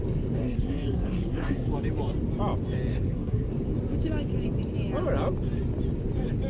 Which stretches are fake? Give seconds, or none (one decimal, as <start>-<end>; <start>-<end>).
0.4-1.7; 2.9-3.5